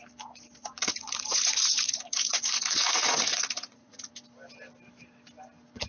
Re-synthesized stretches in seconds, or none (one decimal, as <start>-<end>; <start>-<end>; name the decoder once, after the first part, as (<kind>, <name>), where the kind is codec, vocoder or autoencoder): 0.6-4.1 (vocoder, Vocos)